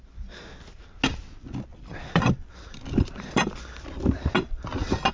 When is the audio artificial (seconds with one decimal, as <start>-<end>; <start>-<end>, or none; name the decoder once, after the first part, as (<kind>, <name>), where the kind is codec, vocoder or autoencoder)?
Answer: 1.7-4.3 (vocoder, BigVGAN v2)